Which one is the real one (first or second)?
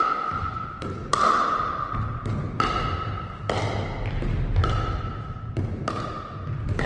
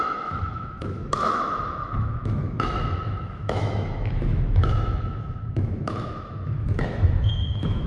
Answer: first